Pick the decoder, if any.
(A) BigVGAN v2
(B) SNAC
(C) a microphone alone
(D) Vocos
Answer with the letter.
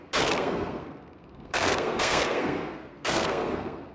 B